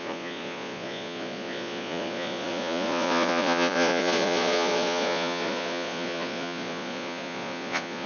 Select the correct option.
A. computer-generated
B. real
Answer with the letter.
A